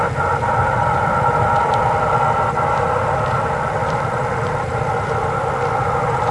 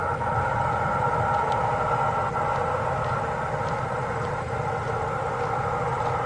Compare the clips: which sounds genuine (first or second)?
second